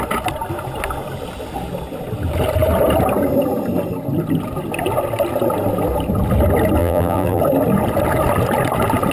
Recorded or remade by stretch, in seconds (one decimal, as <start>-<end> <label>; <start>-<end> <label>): 0.0-6.8 recorded; 6.8-7.4 remade; 7.4-9.1 recorded